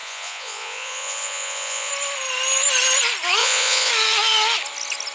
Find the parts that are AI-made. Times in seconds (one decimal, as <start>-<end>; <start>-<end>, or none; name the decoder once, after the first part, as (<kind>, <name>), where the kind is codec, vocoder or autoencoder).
0.0-1.9 (vocoder, Vocos); 3.4-3.9